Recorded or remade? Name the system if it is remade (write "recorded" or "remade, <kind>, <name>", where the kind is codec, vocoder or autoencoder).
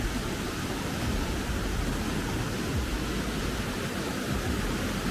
recorded